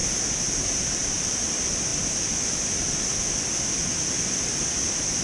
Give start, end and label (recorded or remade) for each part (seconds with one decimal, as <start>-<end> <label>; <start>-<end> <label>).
0.0-1.0 remade; 1.0-5.2 recorded

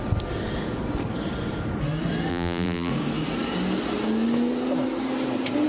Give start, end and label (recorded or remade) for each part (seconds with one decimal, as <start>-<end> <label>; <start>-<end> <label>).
0.0-2.3 recorded; 2.3-2.9 remade; 2.9-5.7 recorded

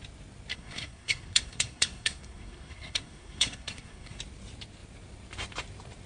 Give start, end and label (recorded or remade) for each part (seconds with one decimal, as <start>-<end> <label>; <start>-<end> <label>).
0.0-0.5 recorded; 0.5-4.2 remade; 4.2-6.1 recorded

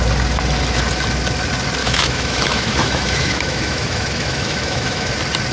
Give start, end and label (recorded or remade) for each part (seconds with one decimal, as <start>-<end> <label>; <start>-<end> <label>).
0.0-1.8 recorded; 1.8-5.1 remade; 5.1-5.5 recorded

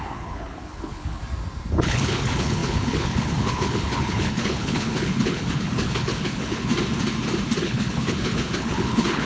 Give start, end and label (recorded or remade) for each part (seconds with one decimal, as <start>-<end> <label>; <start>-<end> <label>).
0.0-1.2 remade; 1.2-1.7 recorded; 1.7-6.7 remade; 6.7-7.6 recorded; 7.6-9.3 remade

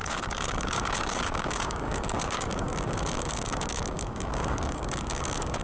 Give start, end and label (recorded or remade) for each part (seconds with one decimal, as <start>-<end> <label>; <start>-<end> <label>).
0.0-5.6 remade

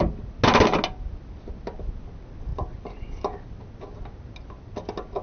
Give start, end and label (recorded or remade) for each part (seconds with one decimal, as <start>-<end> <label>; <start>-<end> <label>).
0.0-5.2 recorded

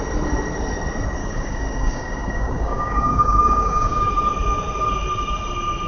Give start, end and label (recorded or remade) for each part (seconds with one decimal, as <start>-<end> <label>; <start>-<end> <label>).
0.0-1.2 recorded; 1.2-4.1 remade; 4.1-5.9 recorded